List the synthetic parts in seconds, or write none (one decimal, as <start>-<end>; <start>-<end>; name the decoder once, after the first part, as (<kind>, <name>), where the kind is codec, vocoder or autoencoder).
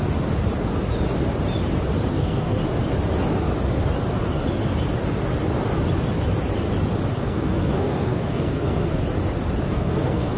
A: 2.1-2.6 (codec, SNAC); 7.1-9.0; 9.6-10.4